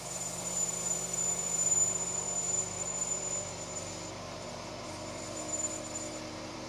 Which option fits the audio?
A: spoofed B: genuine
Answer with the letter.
A